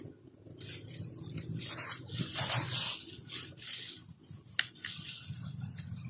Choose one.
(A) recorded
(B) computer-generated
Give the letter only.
A